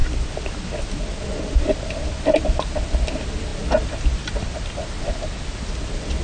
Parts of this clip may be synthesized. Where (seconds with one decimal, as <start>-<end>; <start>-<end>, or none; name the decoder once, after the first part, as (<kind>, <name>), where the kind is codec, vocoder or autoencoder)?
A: none